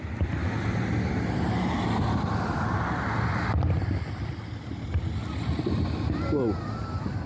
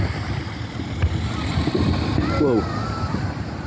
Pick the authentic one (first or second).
first